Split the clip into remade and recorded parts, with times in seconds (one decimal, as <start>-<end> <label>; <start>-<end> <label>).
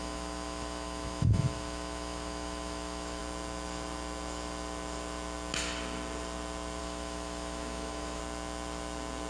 0.0-3.2 remade; 3.2-6.8 recorded; 6.8-8.2 remade; 8.2-9.3 recorded